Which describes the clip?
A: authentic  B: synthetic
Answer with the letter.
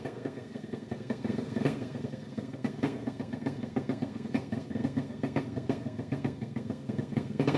B